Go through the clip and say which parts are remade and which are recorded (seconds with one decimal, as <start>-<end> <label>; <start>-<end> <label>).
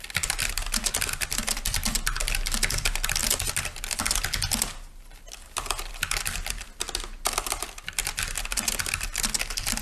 0.0-9.8 recorded